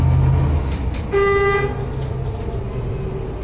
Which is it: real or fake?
real